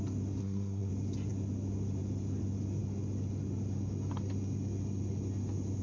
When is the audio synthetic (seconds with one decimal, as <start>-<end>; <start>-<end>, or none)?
0.4-0.9